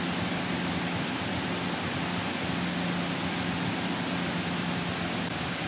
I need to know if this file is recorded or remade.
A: recorded